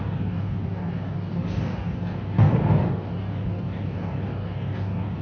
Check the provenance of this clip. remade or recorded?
remade